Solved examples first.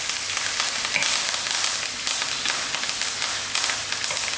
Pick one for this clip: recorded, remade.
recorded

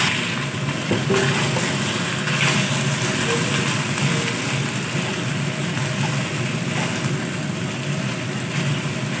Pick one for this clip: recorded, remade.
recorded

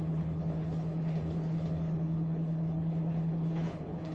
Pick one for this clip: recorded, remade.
remade